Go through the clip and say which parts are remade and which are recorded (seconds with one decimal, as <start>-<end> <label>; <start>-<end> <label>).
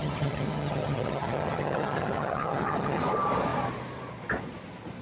0.0-3.0 remade; 3.0-5.0 recorded